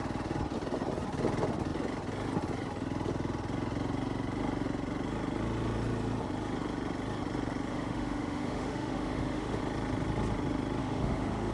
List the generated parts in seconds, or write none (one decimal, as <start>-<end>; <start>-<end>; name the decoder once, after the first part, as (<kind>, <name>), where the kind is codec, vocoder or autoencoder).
7.7-9.6 (autoencoder, DAC-VAE); 10.8-11.5